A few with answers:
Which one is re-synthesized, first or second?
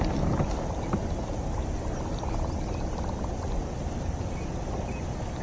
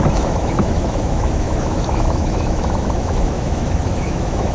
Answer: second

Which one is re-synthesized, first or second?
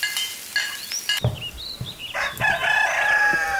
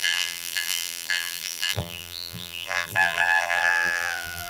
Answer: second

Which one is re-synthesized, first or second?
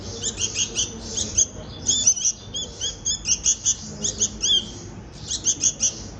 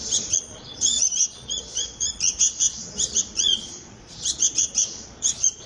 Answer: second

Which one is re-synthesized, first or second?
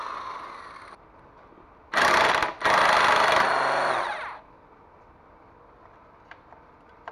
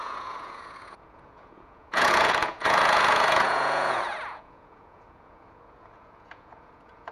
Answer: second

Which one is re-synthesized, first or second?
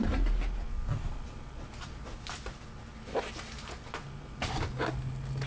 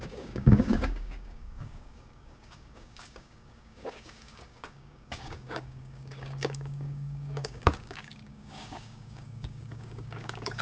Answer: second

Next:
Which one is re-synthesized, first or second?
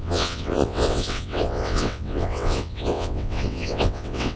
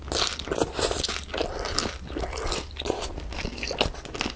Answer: first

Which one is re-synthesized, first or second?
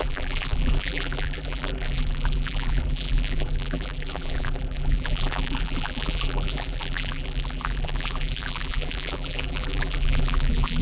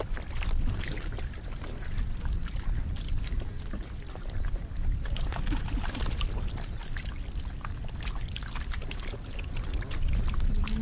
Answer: first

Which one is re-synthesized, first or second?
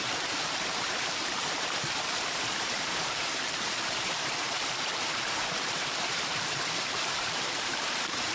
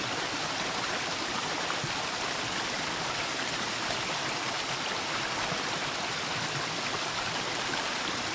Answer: first